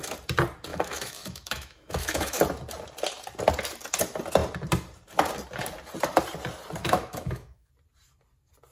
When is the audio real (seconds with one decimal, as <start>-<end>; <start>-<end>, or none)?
0.0-0.7; 2.4-6.8; 7.7-8.7